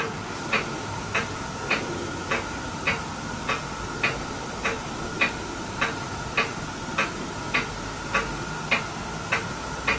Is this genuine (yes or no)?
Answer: yes